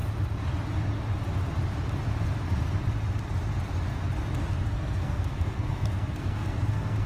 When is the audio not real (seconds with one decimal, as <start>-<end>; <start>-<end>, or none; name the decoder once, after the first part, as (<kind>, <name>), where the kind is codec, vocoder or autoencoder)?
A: 4.4-7.1 (codec, SNAC)